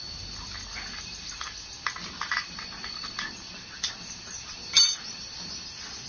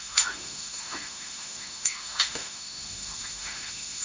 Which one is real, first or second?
first